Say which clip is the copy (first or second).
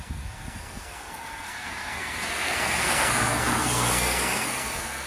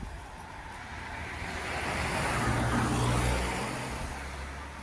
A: first